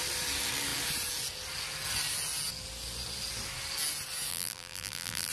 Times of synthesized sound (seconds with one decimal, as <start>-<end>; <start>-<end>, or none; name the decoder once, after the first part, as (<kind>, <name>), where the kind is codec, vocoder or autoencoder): 4.3-5.3 (vocoder, BigVGAN v2)